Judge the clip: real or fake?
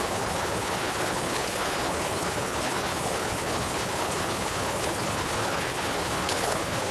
fake